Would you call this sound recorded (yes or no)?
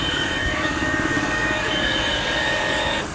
no